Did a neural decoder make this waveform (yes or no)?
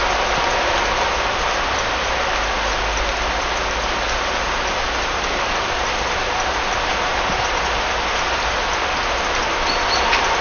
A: no